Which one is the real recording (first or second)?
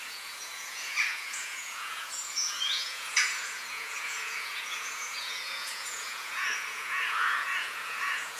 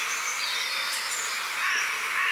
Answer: second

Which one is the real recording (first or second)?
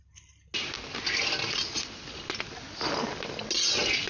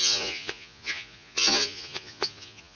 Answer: first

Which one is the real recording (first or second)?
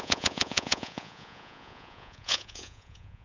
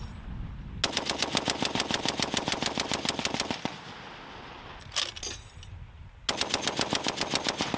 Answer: second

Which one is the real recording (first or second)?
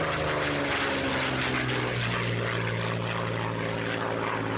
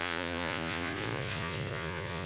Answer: first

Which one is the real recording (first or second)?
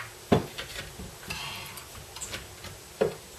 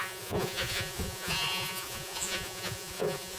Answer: first